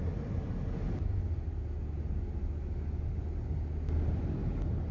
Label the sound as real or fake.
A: real